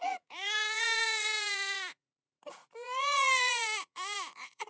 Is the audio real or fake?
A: fake